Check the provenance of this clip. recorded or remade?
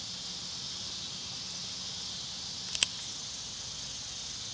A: recorded